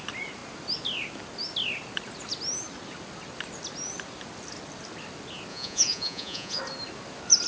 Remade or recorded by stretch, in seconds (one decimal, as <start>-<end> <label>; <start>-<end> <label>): 0.0-5.5 recorded; 5.5-6.6 remade; 6.6-7.5 recorded